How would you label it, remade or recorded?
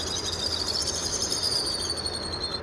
recorded